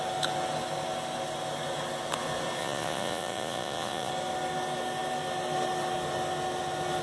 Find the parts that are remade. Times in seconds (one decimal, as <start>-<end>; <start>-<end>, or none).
2.6-4.1